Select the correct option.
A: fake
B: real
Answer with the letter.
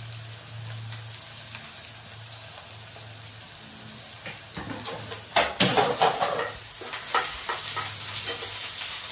B